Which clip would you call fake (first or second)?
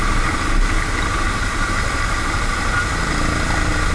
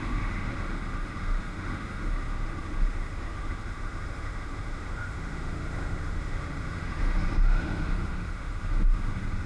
second